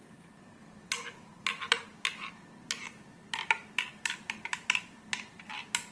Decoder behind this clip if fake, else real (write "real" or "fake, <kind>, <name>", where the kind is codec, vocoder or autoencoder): real